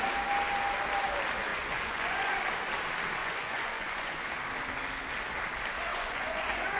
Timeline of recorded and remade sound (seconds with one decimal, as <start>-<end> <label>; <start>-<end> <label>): 0.0-1.5 recorded; 1.5-2.3 remade; 2.3-3.2 recorded; 3.2-4.2 remade; 4.2-5.9 recorded; 5.9-6.8 remade